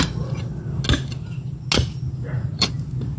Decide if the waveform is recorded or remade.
recorded